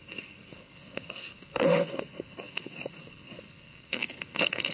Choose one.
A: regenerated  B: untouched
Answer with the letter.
A